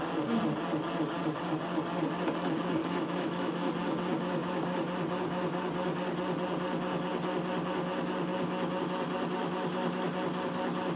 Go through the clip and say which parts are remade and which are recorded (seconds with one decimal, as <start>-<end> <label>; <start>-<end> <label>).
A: 0.0-2.8 recorded; 2.8-3.7 remade; 3.7-9.4 recorded; 9.4-10.1 remade; 10.1-11.0 recorded